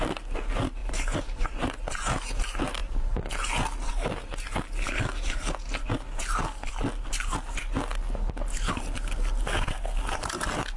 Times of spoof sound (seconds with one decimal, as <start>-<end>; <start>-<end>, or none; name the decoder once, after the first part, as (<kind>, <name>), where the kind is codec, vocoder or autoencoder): 0.8-1.8 (vocoder, BigVGAN v2); 2.8-3.3